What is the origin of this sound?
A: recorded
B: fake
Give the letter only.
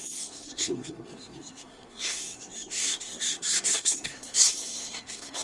B